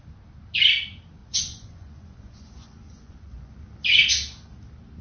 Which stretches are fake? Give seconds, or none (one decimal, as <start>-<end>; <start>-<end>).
1.2-3.5

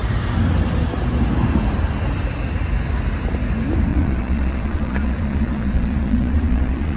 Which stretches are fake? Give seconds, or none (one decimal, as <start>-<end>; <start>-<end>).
3.9-7.0

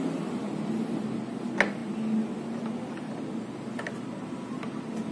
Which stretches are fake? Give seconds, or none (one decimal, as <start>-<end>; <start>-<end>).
none

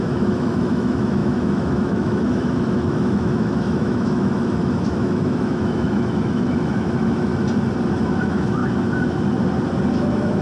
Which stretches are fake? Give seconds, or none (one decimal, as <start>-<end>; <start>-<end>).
0.0-7.3; 7.9-8.6; 9.9-10.4

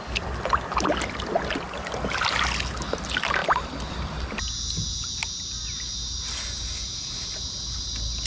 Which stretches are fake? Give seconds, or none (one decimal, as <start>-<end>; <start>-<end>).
none

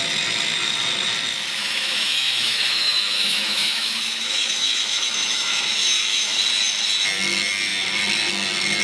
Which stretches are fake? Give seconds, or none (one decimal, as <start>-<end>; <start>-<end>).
1.6-6.4

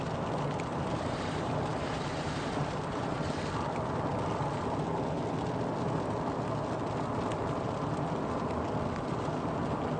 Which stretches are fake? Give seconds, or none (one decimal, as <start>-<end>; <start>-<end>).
0.7-3.4